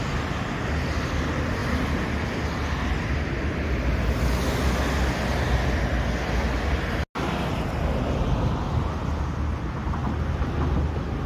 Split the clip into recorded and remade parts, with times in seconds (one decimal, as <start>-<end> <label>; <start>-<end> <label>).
0.0-11.3 recorded

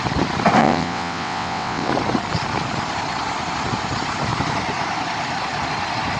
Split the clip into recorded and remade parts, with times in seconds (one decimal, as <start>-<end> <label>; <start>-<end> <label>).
0.0-0.6 recorded; 0.6-1.9 remade; 1.9-6.2 recorded

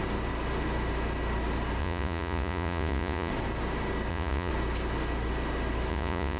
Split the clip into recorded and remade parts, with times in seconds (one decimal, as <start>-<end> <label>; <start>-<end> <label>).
0.0-1.8 recorded; 1.8-3.3 remade; 3.3-4.1 recorded; 4.1-4.5 remade; 4.5-5.9 recorded; 5.9-6.4 remade

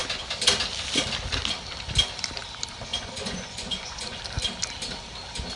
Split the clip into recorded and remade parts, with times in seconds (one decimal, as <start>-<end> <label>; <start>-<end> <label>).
0.0-2.9 recorded; 2.9-4.2 remade; 4.2-5.6 recorded

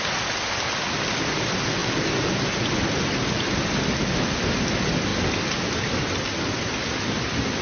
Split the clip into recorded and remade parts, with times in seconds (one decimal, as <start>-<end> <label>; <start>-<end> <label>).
0.0-7.6 recorded

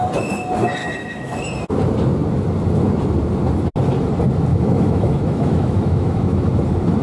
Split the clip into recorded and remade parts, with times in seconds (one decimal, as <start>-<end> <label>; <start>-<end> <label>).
0.0-0.8 recorded; 0.8-1.4 remade; 1.4-4.5 recorded; 4.5-6.5 remade; 6.5-7.0 recorded

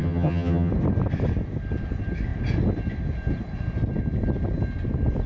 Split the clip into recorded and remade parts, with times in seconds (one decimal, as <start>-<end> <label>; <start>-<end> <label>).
0.0-0.7 remade; 0.7-5.3 recorded

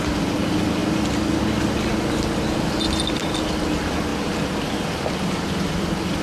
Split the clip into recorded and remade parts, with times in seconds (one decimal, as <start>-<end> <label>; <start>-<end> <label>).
0.0-6.2 recorded